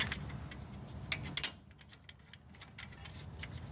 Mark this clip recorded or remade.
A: recorded